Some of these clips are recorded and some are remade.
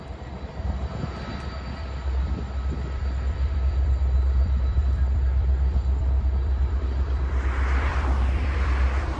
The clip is remade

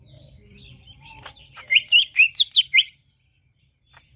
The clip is remade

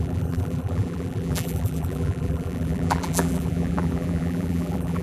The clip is remade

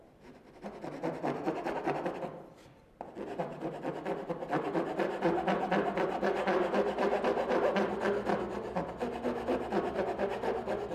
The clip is recorded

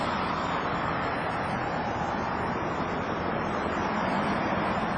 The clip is recorded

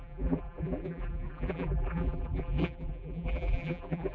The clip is remade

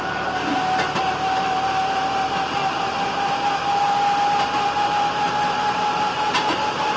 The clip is recorded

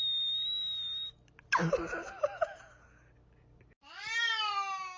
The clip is recorded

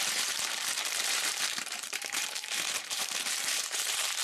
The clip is remade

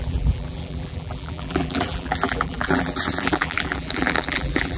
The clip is remade